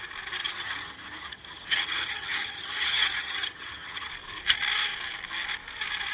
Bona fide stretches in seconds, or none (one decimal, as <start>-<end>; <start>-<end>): 0.0-0.4; 4.1-6.1